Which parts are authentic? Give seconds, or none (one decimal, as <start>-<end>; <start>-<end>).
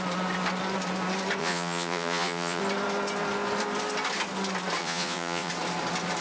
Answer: 0.0-1.4; 2.6-4.8; 5.5-6.2